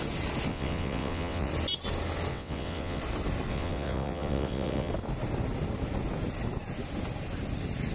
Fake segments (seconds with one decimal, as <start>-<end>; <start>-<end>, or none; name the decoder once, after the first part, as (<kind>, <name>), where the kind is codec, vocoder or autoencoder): 0.5-1.5 (vocoder, WaveNeXt); 2.3-3.0; 3.5-4.9